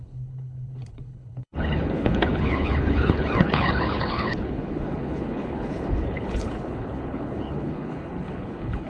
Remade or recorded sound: remade